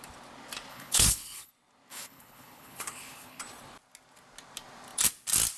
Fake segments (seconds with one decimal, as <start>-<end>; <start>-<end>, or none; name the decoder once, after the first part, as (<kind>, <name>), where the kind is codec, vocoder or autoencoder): 0.7-1.5 (codec, HILCodec); 1.9-3.4